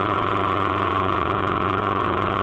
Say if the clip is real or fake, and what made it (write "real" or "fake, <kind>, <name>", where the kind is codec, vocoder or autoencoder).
fake, vocoder, WaveNeXt